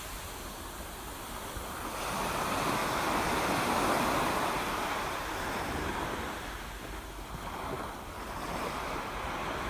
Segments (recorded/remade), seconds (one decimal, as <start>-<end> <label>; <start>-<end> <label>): 0.0-9.7 recorded